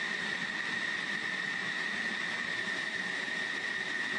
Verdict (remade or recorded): remade